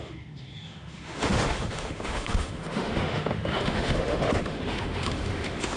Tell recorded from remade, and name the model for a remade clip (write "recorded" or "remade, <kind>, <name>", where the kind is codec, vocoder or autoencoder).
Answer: remade, autoencoder, DAC-VAE